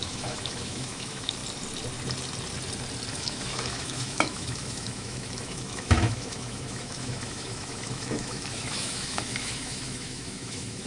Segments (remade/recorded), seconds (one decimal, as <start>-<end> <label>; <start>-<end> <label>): 0.0-1.4 remade; 1.4-3.1 recorded; 3.1-10.9 remade